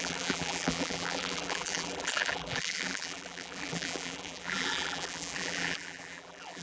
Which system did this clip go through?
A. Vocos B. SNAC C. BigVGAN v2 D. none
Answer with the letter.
C